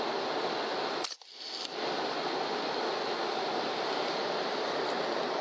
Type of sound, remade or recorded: recorded